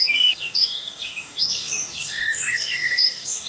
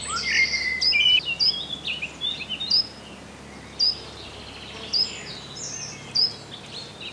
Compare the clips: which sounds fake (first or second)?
first